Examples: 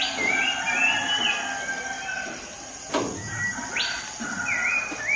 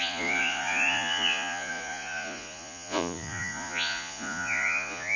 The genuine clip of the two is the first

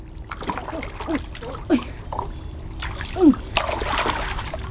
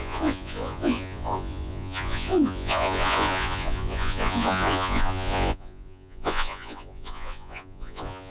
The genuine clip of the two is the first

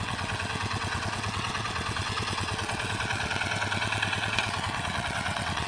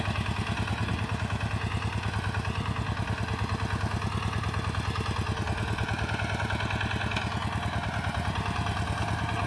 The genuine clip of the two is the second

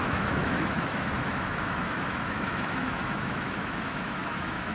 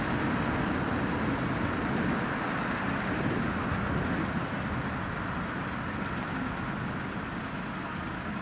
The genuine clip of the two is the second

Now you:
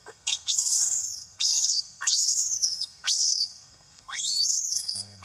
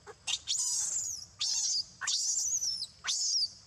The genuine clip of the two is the second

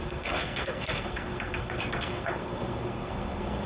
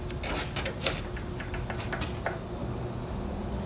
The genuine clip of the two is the second